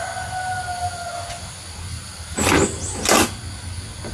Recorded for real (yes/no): yes